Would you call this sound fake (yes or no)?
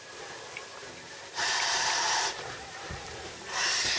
yes